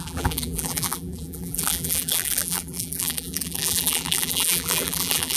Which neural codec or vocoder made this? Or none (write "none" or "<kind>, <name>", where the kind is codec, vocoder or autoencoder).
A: vocoder, BigVGAN v2